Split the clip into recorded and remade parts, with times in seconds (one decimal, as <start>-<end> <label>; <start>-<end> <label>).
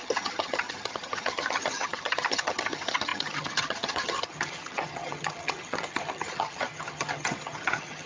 0.0-8.1 remade